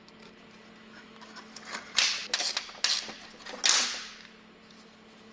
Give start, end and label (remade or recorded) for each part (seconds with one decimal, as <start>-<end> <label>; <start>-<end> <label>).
0.0-0.8 recorded; 0.8-1.4 remade; 1.4-5.3 recorded